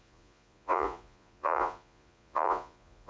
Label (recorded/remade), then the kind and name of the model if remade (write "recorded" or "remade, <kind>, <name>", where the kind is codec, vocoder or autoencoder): remade, vocoder, Vocos